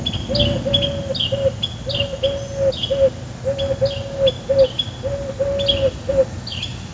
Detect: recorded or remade recorded